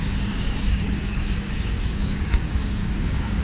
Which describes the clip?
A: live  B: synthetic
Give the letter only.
B